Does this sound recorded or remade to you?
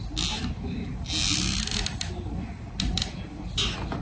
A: recorded